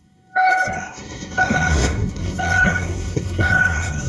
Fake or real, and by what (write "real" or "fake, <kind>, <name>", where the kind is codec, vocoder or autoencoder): fake, codec, SNAC